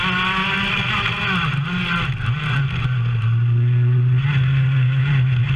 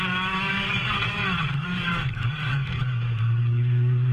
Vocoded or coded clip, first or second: second